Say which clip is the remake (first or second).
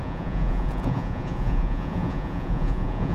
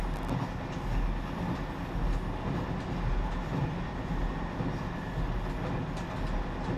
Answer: first